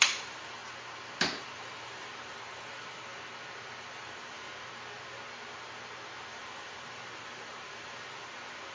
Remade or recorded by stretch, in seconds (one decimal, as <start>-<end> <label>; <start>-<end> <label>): 0.0-0.6 remade; 0.6-1.4 recorded; 1.4-3.1 remade; 3.1-3.9 recorded; 3.9-4.5 remade; 4.5-6.3 recorded; 6.3-8.7 remade